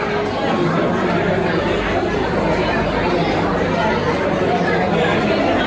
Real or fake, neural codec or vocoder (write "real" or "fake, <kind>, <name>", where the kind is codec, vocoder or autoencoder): real